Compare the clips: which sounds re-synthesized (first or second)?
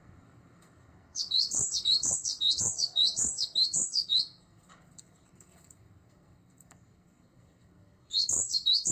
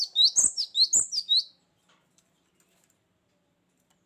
first